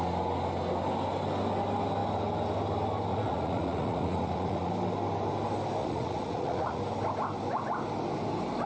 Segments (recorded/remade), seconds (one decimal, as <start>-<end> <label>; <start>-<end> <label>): 0.0-3.1 recorded; 3.1-4.7 remade; 4.7-5.8 recorded; 5.8-6.8 remade; 6.8-8.7 recorded